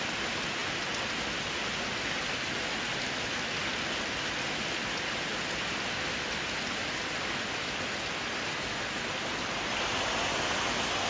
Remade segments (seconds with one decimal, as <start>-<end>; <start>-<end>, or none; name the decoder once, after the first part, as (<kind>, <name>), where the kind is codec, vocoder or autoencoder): none